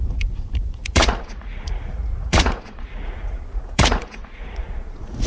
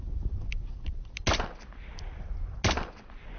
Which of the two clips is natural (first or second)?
second